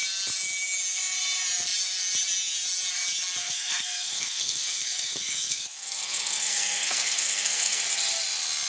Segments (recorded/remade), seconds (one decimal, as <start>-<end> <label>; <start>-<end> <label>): 0.0-3.4 recorded; 3.4-7.8 remade; 7.8-8.7 recorded